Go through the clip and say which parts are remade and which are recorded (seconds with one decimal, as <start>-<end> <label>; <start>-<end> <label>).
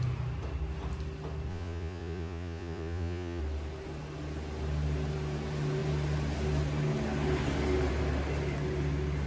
0.0-1.5 recorded; 1.5-3.4 remade; 3.4-9.3 recorded